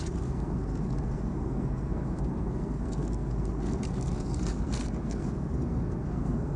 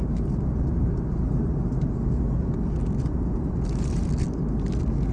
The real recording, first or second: second